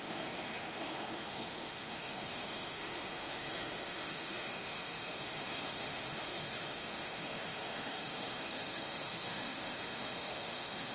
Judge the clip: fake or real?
fake